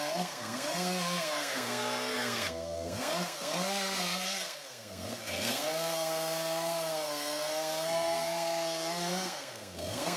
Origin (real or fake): fake